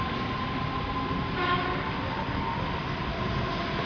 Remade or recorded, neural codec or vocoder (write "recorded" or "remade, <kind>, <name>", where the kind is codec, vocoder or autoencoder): recorded